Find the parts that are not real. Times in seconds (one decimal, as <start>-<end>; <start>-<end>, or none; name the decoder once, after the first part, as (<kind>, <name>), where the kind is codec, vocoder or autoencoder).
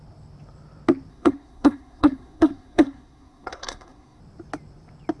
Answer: 1.1-4.2 (codec, SNAC)